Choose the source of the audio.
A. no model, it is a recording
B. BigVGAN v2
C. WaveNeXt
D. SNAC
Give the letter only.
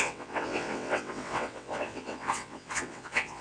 C